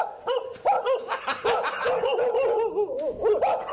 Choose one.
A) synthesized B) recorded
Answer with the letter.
B